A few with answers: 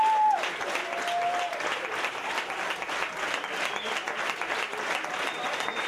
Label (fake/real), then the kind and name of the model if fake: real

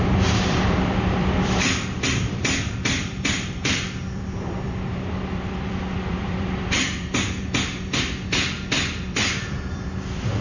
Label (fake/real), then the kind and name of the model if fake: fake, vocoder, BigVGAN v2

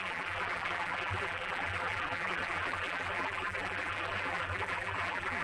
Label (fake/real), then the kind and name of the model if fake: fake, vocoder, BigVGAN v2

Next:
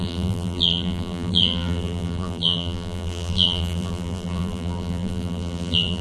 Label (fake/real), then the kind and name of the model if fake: fake, vocoder, BigVGAN v2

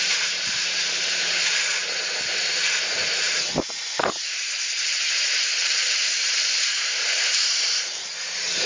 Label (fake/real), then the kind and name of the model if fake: fake, vocoder, BigVGAN v2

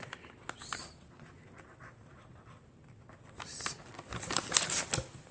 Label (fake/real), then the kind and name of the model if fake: real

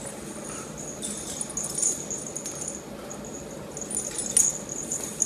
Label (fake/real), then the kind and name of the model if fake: real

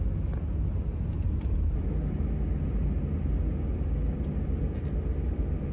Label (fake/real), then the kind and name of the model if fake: real